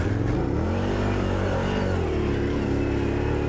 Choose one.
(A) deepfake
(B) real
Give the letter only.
B